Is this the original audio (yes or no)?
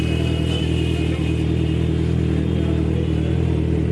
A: yes